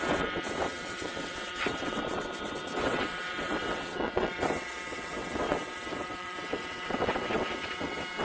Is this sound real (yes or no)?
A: no